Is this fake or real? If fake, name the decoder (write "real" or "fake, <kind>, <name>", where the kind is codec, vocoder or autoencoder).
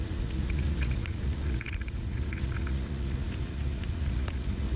fake, vocoder, Vocos